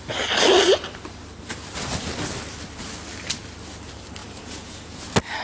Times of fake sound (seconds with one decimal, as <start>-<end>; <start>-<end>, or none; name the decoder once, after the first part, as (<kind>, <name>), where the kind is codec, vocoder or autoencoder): 4.2-5.0 (vocoder, Vocos)